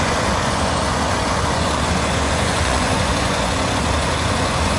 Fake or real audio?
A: fake